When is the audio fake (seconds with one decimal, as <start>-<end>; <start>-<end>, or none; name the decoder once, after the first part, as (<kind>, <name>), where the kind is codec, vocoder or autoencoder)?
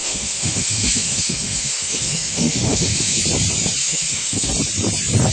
0.0-3.2 (autoencoder, DAC-VAE); 3.8-4.5